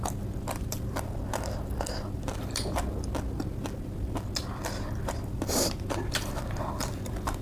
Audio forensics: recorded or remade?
remade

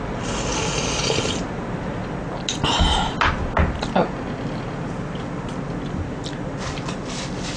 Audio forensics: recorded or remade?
recorded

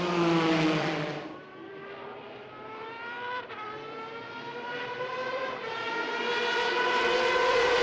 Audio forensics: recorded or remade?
remade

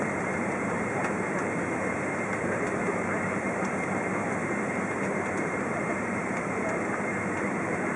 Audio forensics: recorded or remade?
remade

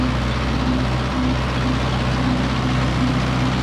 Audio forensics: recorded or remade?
recorded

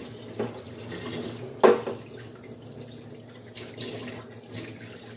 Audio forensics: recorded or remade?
recorded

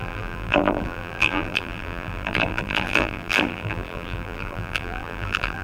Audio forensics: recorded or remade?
remade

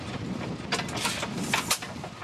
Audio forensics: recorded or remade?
recorded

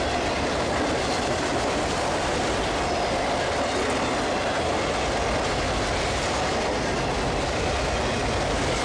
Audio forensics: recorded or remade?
recorded